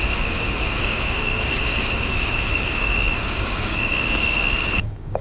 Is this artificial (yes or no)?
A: yes